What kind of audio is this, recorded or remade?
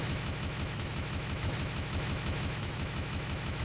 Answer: remade